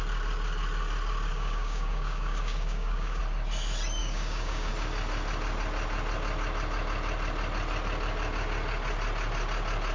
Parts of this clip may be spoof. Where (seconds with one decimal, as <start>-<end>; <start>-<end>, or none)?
1.3-3.2; 4.0-4.7